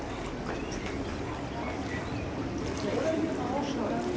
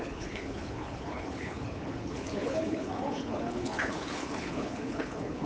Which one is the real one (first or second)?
first